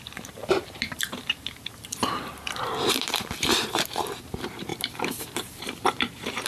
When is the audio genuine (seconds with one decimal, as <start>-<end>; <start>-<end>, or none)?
none